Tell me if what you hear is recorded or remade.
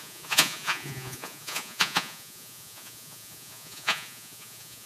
remade